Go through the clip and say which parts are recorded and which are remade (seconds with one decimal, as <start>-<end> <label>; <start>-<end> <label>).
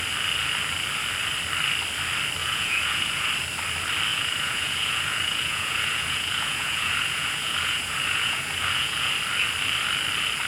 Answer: 0.0-2.4 recorded; 2.4-3.3 remade; 3.3-4.1 recorded; 4.1-9.1 remade; 9.1-10.5 recorded